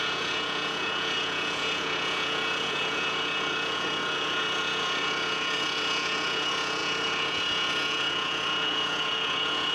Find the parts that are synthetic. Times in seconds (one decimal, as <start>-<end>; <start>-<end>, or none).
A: 0.0-9.7